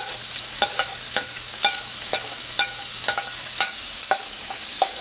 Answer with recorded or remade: remade